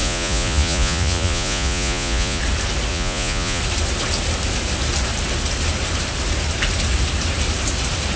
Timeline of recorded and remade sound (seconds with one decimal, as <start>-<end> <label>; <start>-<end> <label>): 0.0-2.4 remade; 2.4-2.9 recorded; 2.9-3.6 remade; 3.6-8.2 recorded